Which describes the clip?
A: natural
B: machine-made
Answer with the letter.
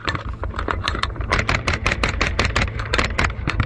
B